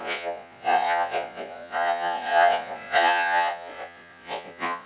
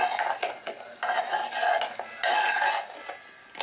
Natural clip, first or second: second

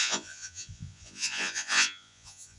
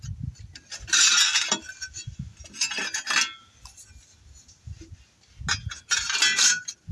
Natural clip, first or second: second